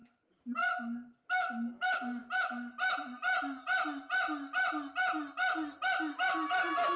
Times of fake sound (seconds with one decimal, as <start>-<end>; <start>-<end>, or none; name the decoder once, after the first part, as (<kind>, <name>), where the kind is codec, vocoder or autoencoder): none